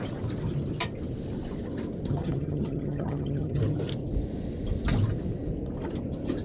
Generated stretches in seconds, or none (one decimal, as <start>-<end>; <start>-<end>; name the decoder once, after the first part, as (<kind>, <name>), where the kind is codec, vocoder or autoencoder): 2.1-3.6 (vocoder, HiFi-GAN)